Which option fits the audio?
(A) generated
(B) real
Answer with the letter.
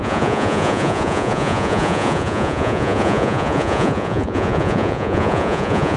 A